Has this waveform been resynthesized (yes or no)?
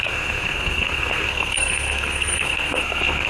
yes